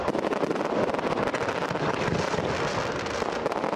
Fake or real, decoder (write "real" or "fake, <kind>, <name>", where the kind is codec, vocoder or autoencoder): real